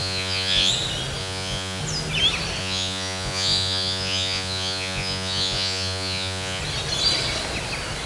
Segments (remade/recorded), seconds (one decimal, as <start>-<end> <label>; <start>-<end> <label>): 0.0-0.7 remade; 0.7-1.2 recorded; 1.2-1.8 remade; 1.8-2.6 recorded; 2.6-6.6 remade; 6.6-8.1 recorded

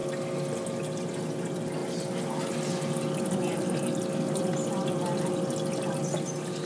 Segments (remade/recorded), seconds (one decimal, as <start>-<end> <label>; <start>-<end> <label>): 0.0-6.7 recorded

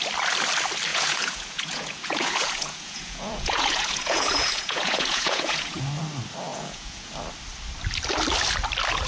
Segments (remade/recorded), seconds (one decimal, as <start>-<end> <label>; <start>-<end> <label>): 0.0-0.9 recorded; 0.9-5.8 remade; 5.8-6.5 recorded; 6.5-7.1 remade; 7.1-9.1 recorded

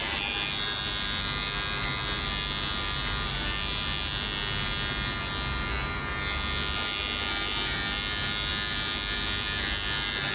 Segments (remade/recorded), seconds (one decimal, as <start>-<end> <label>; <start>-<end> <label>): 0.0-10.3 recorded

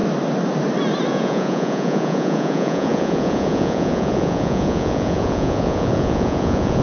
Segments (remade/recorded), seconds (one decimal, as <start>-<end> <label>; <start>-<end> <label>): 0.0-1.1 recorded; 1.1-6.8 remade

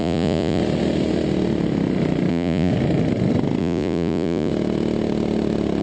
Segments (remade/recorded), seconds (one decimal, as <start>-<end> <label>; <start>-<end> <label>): 0.0-0.6 remade; 0.6-2.3 recorded; 2.3-2.7 remade; 2.7-3.6 recorded; 3.6-4.5 remade; 4.5-5.8 recorded

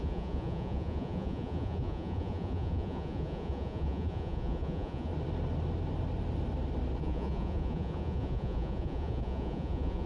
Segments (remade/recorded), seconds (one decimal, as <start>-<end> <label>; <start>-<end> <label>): 0.0-5.1 remade; 5.1-7.0 recorded; 7.0-10.1 remade

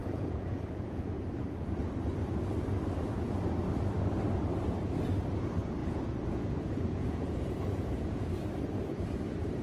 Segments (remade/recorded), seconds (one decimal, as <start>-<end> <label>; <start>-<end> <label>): 0.0-1.8 remade; 1.8-5.8 recorded; 5.8-8.3 remade; 8.3-9.6 recorded